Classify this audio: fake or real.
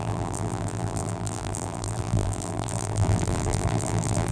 fake